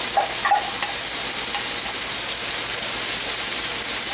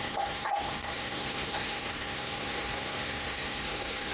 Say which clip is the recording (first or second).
first